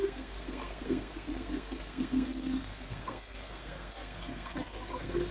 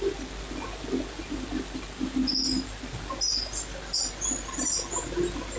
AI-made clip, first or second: first